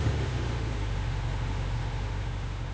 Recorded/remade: remade